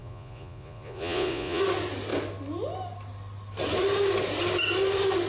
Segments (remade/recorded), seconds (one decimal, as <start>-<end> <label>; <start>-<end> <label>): 0.0-1.6 remade; 1.6-5.3 recorded